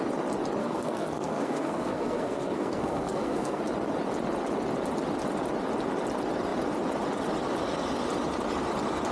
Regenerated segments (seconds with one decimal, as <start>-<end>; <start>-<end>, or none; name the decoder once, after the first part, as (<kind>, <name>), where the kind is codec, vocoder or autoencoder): 0.6-3.6 (codec, SNAC)